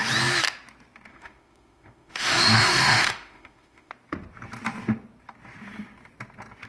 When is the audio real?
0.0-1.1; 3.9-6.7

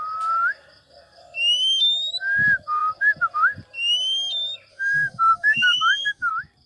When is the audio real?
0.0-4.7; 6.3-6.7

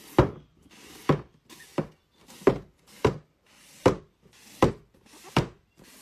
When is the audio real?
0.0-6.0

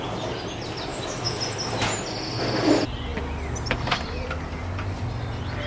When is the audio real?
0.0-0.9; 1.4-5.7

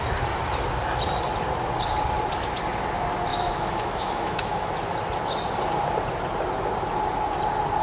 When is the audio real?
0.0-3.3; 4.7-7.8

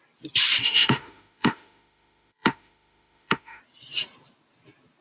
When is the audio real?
0.0-0.6; 3.6-5.0